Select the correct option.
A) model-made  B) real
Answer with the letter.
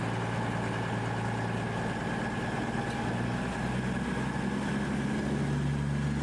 B